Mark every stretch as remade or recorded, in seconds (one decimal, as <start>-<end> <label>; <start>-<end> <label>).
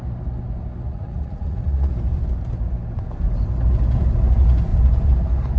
0.0-0.9 recorded; 0.9-1.9 remade; 1.9-5.6 recorded